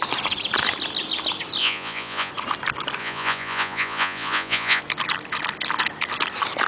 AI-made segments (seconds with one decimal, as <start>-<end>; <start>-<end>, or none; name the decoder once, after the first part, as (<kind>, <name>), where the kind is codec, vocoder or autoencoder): 1.6-2.3 (vocoder, Vocos); 3.0-4.8